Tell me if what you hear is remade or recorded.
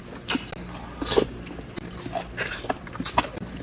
recorded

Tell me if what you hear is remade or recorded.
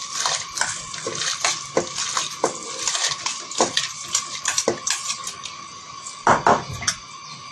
recorded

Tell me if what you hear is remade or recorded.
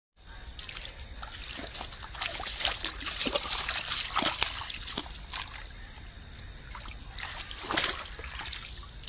recorded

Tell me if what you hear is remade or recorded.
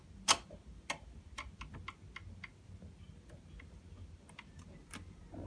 recorded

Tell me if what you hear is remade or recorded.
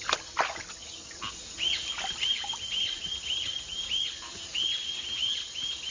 recorded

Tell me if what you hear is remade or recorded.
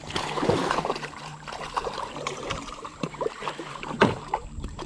remade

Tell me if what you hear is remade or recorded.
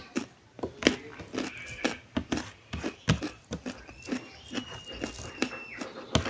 recorded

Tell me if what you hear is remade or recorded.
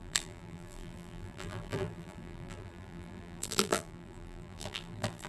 remade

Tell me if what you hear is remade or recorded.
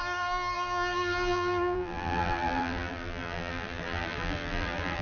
remade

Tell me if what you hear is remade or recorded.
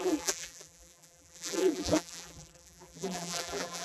remade